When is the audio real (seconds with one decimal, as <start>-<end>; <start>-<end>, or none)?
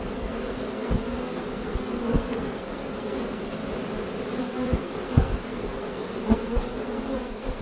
3.6-4.4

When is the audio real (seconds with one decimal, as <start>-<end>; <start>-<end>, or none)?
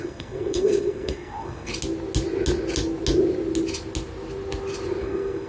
1.7-5.0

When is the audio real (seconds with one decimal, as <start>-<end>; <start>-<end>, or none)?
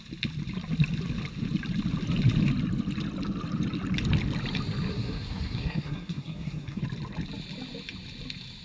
0.0-4.9; 6.8-8.6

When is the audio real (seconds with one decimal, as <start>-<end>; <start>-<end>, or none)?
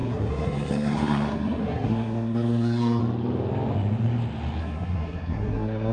3.0-4.6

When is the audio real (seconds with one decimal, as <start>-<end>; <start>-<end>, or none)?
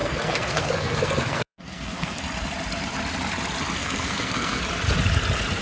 2.2-3.8; 4.6-5.6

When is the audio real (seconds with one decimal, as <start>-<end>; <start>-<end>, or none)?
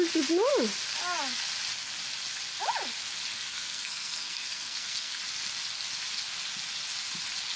0.0-3.3; 5.2-7.6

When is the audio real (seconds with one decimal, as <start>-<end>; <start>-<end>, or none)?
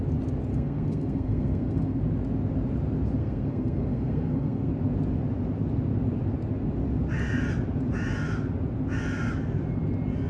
0.0-0.5; 2.0-3.2; 4.7-10.3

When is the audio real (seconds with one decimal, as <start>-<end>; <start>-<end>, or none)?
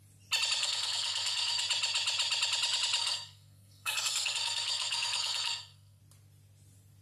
0.0-0.6; 1.6-3.0; 6.0-7.0